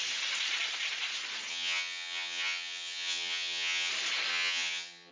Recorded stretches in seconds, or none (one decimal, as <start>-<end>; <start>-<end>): 0.0-1.5; 3.9-4.3